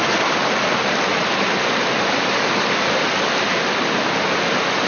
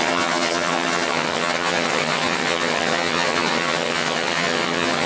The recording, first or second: first